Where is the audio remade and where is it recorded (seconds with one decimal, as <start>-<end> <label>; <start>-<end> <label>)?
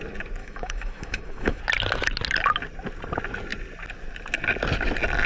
0.0-0.4 recorded; 0.4-1.6 remade; 1.6-5.3 recorded